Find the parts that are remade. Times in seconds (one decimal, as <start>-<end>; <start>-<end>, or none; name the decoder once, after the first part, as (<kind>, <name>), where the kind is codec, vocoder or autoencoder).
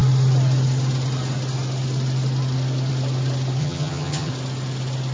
3.6-4.3 (vocoder, HiFi-GAN)